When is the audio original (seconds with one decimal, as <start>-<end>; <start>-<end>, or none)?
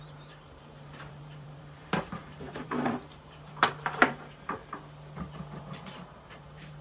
4.6-5.6